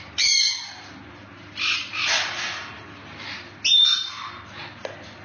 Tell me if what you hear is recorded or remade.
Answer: recorded